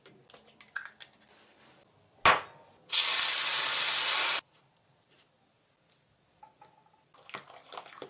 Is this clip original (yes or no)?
yes